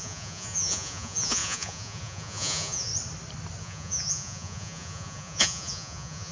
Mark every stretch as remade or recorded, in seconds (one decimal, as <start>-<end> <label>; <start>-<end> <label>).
0.0-2.9 remade; 2.9-3.6 recorded; 3.6-6.3 remade